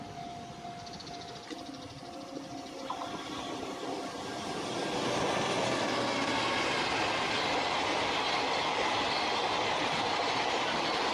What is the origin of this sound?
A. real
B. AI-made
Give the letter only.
A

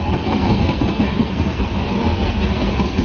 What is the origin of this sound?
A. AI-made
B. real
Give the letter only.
A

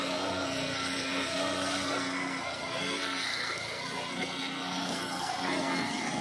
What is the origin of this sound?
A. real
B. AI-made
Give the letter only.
B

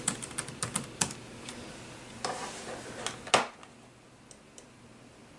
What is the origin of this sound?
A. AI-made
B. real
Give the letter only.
B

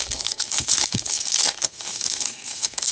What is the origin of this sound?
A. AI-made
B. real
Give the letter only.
A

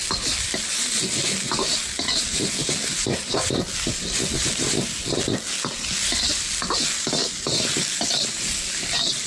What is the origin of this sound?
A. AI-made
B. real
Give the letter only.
B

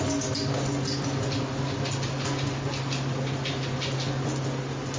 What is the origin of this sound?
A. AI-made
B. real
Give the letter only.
B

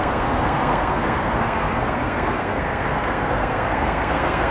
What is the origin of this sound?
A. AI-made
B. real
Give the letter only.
A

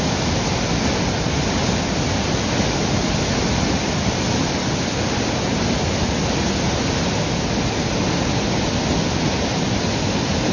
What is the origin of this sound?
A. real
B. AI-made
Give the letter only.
A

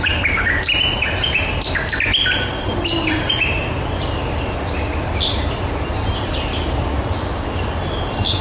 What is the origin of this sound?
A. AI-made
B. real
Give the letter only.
B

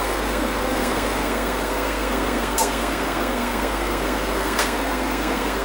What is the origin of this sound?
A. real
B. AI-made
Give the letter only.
B